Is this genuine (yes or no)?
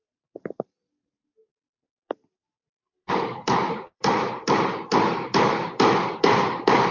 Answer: no